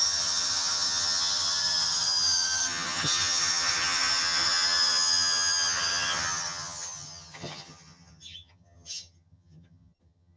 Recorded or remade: remade